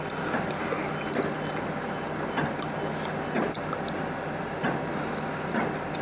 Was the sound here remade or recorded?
recorded